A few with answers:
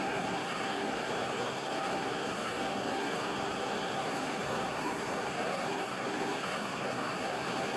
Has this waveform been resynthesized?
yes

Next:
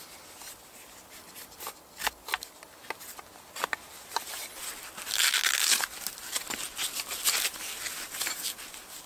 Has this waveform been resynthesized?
no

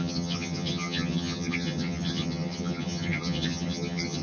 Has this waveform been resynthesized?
yes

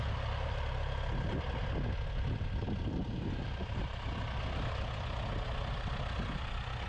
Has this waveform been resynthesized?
no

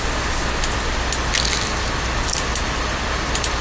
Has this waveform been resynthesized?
no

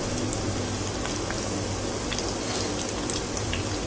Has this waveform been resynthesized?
no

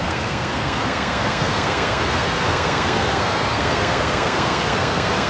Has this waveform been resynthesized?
yes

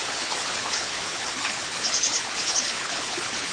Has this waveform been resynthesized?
yes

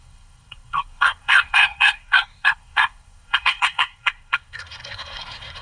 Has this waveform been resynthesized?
yes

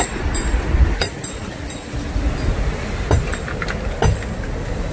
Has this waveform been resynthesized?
no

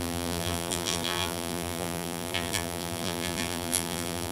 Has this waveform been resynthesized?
yes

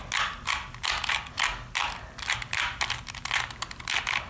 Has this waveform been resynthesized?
no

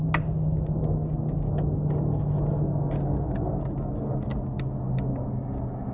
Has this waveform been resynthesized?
no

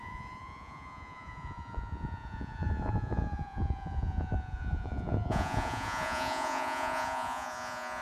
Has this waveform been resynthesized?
yes